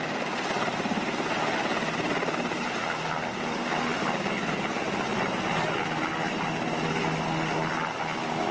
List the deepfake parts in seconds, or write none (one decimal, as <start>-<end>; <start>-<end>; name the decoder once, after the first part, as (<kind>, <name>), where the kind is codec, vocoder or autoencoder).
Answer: none